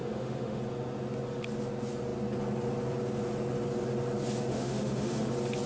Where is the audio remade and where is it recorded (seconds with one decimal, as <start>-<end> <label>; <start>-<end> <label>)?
0.0-0.6 remade; 0.6-4.5 recorded; 4.5-5.3 remade; 5.3-5.7 recorded